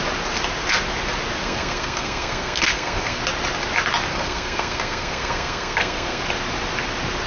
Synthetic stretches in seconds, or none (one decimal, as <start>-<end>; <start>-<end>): 1.4-3.2; 4.1-6.2